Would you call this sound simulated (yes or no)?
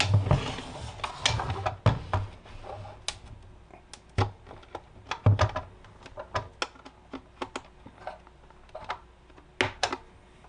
no